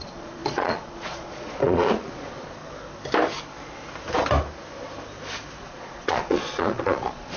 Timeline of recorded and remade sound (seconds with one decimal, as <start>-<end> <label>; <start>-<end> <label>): 0.0-2.6 remade; 2.6-5.6 recorded; 5.6-7.4 remade